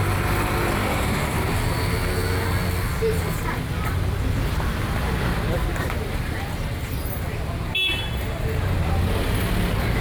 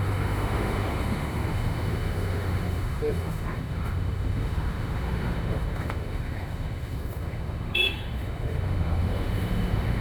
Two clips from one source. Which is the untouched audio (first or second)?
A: first